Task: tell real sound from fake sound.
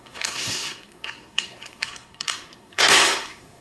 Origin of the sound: fake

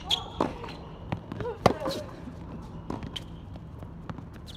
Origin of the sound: real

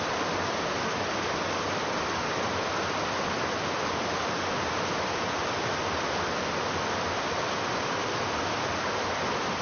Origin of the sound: real